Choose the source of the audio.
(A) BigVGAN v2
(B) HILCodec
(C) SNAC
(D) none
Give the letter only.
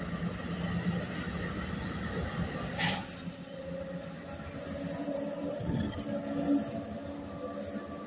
D